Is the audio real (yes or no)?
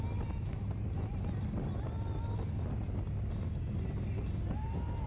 yes